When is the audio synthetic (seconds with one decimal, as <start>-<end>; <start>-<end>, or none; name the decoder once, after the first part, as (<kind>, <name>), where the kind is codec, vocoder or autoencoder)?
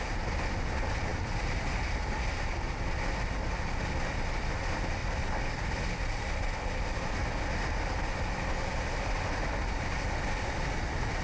5.0-5.7 (vocoder, BigVGAN v2)